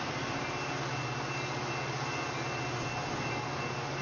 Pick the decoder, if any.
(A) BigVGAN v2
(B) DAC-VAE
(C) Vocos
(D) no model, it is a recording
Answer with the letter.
D